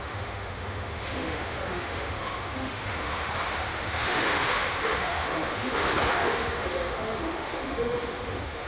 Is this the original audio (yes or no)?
no